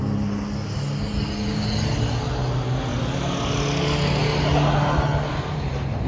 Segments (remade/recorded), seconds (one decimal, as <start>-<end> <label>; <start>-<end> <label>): 0.0-6.1 recorded